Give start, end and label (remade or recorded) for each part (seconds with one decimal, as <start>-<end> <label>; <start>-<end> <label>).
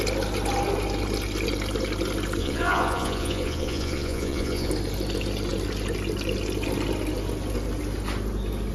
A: 0.0-2.4 recorded; 2.4-4.7 remade; 4.7-8.7 recorded